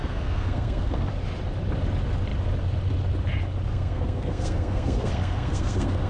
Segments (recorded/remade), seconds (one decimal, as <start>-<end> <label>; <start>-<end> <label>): 0.0-1.1 remade; 1.1-3.7 recorded; 3.7-6.1 remade